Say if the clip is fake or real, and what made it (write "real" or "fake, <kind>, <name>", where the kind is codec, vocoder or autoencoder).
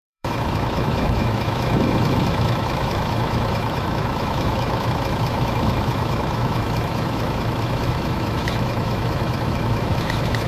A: fake, autoencoder, DAC-VAE